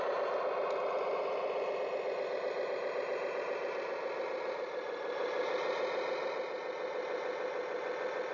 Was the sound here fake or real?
real